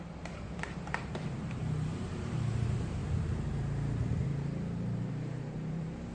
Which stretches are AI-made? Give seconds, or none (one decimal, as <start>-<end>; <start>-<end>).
0.0-3.0; 5.1-6.1